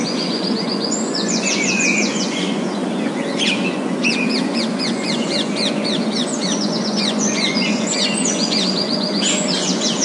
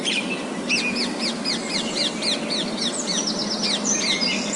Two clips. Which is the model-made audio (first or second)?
first